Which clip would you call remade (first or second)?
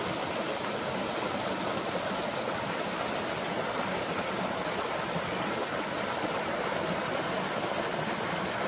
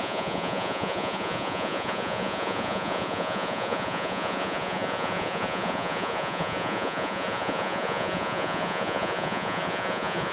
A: second